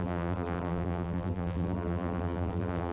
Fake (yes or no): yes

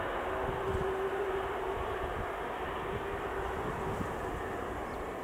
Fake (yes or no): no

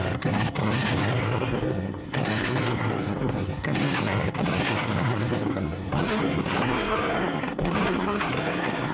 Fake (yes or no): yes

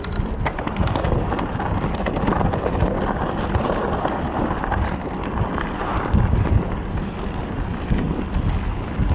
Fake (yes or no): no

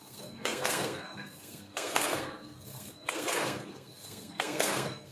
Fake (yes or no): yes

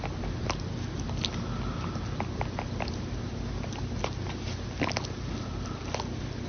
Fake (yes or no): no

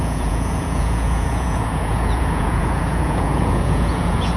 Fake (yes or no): yes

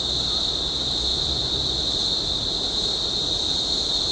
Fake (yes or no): no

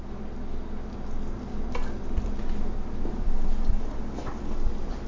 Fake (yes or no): no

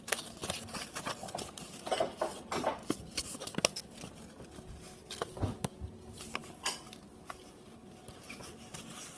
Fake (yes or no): no